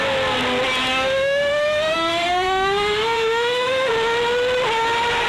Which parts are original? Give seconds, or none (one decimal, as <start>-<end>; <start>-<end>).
0.0-0.9; 3.9-5.3